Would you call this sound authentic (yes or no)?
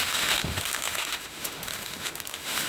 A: no